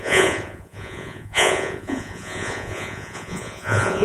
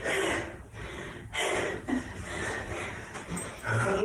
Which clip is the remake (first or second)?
first